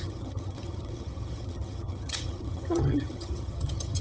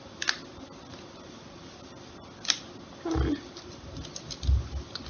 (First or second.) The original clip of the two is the second